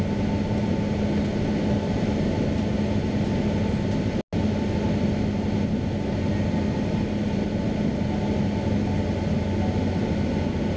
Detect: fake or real real